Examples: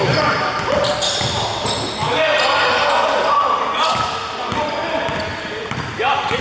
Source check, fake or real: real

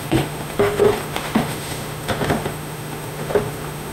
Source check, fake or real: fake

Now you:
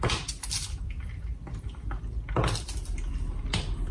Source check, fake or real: real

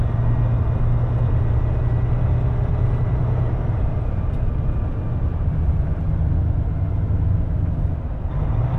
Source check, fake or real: real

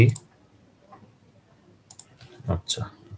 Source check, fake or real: real